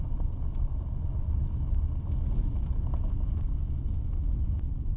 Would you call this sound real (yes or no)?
yes